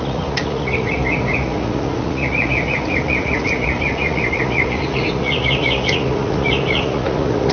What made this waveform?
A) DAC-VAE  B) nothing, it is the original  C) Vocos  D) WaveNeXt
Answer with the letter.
C